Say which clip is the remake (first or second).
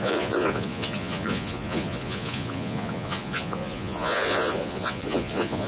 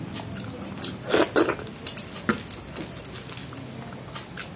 first